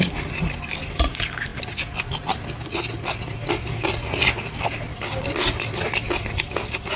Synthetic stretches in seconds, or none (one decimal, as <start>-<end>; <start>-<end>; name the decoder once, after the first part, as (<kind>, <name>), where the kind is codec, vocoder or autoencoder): none